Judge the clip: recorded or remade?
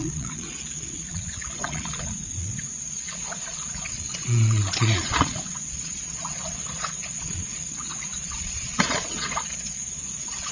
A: remade